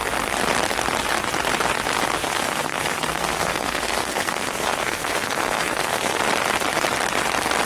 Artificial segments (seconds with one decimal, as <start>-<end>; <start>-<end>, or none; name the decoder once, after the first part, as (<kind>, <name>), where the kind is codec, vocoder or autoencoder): 2.2-6.2 (codec, SNAC)